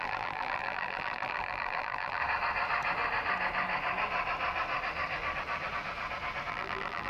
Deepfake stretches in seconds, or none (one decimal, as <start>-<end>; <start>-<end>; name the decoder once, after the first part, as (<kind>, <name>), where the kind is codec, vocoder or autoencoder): 0.0-2.2 (vocoder, BigVGAN v2); 6.5-7.1